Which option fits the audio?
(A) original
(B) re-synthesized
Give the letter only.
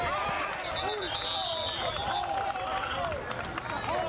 A